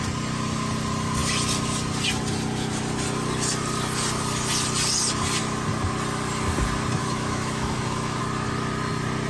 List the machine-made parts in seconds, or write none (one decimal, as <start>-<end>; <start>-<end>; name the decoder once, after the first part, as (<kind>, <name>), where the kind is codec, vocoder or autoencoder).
7.0-8.2 (autoencoder, DAC-VAE)